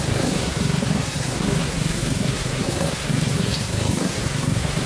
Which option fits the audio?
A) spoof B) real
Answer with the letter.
A